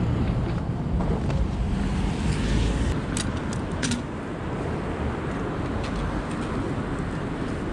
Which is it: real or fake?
real